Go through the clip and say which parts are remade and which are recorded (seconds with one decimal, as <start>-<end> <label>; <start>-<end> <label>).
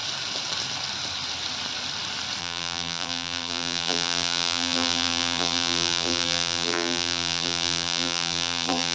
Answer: 0.0-2.4 recorded; 2.4-8.9 remade